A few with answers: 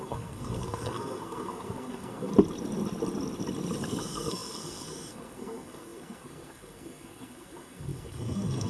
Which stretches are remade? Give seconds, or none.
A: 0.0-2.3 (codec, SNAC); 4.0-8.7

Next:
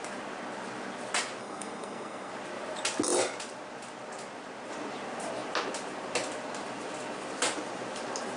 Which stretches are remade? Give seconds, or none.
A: 1.4-2.3 (codec, SNAC)

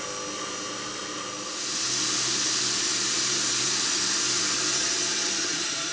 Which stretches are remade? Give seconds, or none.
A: 0.0-1.0 (vocoder, BigVGAN v2); 2.6-5.9

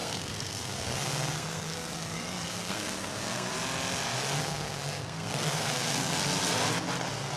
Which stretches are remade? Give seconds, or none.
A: 0.0-3.5 (codec, SNAC); 4.4-6.2